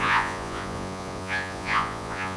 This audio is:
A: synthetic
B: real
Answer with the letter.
A